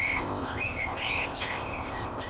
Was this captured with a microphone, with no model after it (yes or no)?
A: no